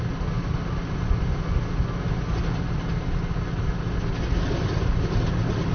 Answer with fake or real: real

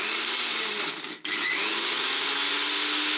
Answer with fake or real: real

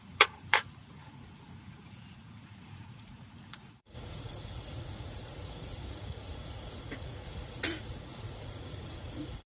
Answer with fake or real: fake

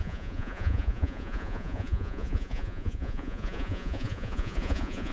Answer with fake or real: fake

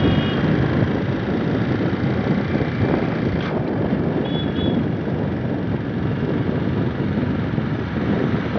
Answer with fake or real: real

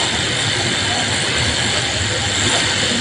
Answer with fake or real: real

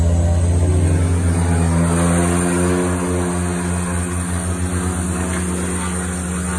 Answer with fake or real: real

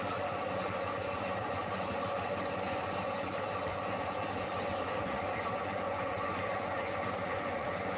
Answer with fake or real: fake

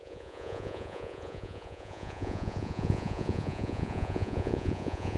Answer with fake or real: fake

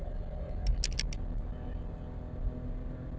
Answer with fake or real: real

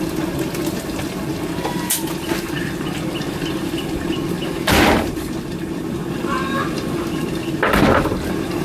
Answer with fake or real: real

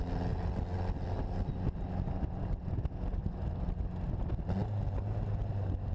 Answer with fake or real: real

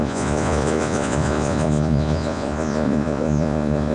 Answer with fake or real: fake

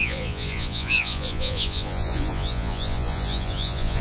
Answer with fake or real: fake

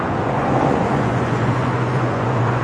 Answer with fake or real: fake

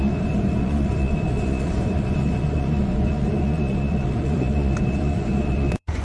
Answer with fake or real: fake